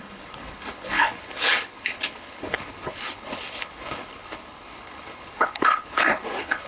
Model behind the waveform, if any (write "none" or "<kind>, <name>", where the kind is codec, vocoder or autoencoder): codec, HILCodec